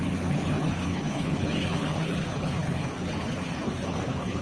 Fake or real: fake